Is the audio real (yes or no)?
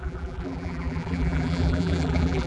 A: no